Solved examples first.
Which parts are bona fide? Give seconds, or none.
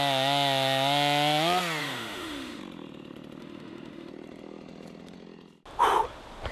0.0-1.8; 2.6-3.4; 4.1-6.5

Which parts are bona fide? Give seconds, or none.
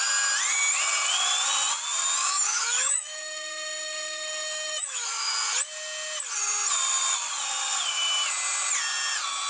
0.0-2.2; 5.3-9.5